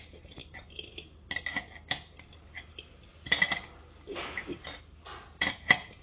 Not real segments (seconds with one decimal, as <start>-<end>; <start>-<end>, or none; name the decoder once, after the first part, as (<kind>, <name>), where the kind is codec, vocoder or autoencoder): none